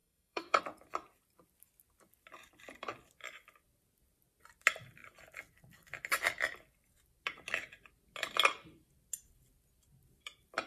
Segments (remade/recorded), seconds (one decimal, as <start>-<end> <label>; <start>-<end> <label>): 0.0-0.6 remade; 0.6-10.7 recorded